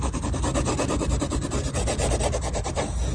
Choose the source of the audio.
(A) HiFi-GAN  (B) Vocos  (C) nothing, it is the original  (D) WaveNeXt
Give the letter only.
C